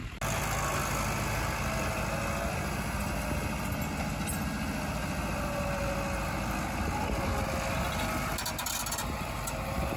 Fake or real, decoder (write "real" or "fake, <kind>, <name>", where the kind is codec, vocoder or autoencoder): real